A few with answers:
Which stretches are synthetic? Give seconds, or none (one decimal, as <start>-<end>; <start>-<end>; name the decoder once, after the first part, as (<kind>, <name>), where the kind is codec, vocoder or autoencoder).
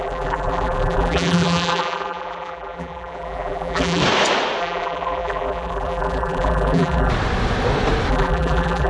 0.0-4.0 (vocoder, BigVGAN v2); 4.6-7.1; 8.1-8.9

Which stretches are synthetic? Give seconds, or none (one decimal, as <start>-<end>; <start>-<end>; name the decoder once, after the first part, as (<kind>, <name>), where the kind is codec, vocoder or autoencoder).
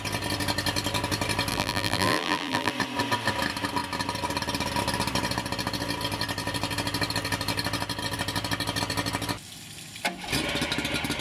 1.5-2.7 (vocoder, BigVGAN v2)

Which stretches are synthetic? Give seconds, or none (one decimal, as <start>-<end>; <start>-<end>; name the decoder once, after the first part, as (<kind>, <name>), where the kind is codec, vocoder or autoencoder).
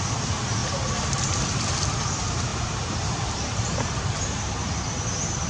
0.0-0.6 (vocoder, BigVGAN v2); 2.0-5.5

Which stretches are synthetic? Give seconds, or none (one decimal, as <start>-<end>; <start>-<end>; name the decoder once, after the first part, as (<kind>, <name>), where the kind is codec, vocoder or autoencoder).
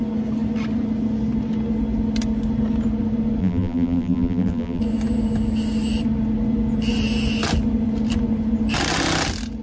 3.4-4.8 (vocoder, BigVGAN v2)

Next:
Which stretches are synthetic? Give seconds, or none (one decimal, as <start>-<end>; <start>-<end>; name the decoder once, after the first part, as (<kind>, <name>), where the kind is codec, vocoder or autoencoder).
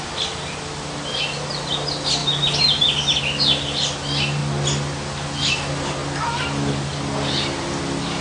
0.0-4.4 (vocoder, BigVGAN v2); 5.4-6.0; 6.7-8.2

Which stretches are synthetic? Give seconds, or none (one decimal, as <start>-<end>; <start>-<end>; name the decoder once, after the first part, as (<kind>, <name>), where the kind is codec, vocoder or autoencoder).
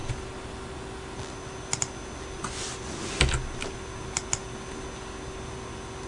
none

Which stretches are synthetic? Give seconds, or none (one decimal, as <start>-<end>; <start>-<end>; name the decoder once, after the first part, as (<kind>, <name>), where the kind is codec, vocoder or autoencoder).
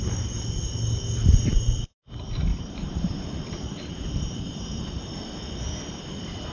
2.5-6.5 (vocoder, BigVGAN v2)